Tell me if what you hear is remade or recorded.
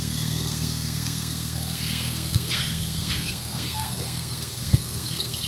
remade